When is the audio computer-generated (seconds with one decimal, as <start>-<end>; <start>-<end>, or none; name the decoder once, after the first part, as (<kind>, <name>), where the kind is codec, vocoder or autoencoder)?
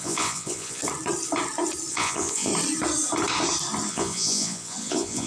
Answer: 0.0-0.8 (vocoder, Vocos); 1.9-2.5; 3.9-5.3